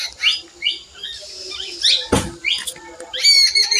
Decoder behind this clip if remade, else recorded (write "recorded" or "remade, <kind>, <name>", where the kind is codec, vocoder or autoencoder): recorded